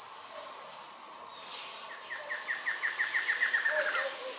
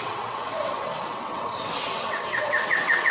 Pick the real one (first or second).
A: first